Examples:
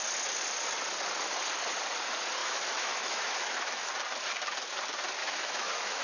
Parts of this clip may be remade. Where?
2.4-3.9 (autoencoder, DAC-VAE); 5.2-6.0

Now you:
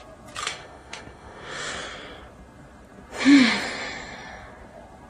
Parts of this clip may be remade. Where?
0.4-1.7 (autoencoder, DAC-VAE)

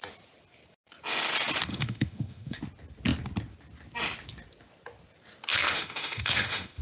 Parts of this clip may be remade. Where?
1.7-2.6 (autoencoder, DAC-VAE); 5.5-6.8

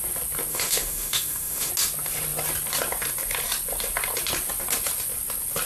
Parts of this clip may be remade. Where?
0.5-1.7 (autoencoder, DAC-VAE)

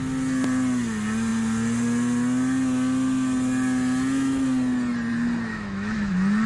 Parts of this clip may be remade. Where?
5.5-6.1 (autoencoder, DAC-VAE)